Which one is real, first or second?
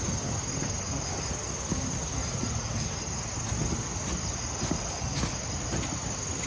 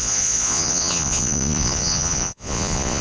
first